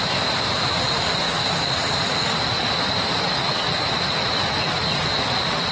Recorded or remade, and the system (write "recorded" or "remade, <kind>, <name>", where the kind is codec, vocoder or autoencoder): remade, vocoder, BigVGAN v2